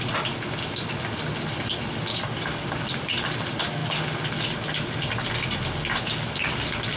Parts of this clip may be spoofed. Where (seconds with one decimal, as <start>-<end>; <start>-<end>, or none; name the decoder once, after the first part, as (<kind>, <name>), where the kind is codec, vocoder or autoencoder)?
2.1-2.8 (codec, DAC)